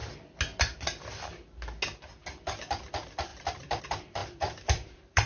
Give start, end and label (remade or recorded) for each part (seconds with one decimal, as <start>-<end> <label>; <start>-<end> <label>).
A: 0.0-3.3 recorded; 3.3-3.8 remade; 3.8-4.2 recorded; 4.2-5.3 remade